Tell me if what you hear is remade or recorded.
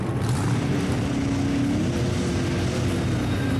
recorded